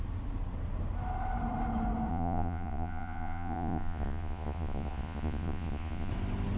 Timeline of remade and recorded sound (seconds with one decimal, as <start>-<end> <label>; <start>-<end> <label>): 0.0-2.1 recorded; 2.1-6.1 remade; 6.1-6.6 recorded